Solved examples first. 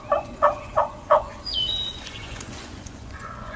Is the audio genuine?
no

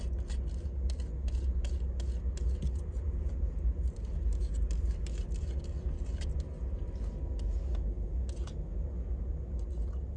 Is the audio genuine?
yes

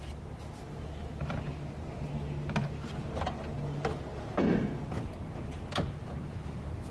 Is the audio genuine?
yes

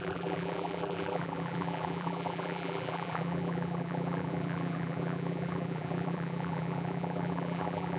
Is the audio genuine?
no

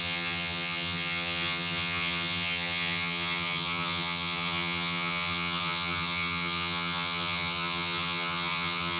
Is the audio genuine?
no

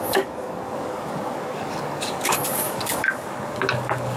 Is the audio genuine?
no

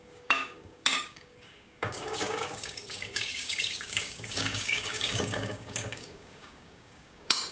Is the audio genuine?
no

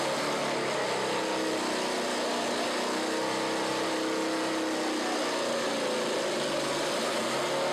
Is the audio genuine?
yes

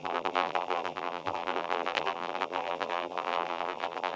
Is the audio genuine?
no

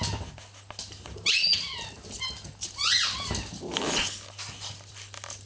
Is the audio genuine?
yes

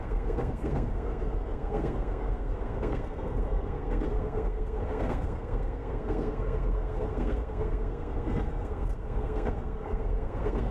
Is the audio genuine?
no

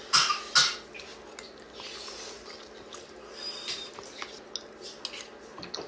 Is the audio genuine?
yes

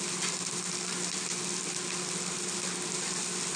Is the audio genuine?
yes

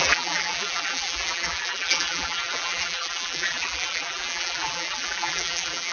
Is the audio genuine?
no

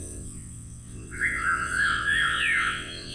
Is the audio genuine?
no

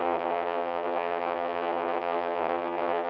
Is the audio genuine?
no